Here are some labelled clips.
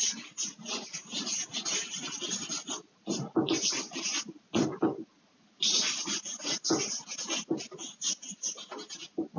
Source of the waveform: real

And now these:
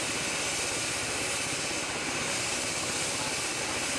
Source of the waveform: real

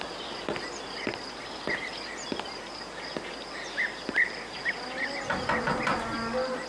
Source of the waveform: real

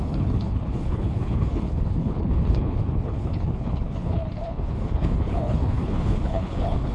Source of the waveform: fake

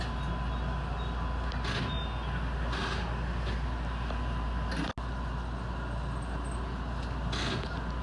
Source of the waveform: real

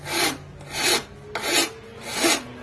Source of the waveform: real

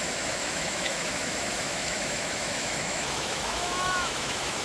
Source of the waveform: fake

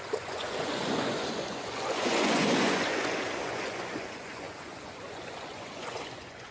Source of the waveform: fake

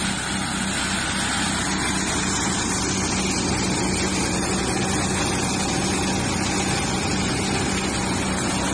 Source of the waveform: real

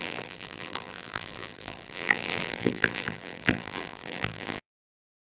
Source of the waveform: fake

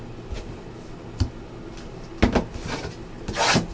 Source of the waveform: real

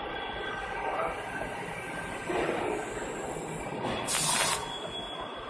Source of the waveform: real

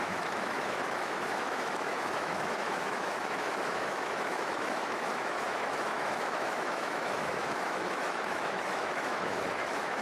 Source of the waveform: fake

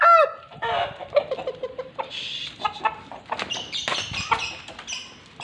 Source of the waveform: real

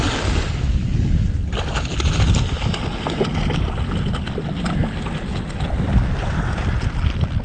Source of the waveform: real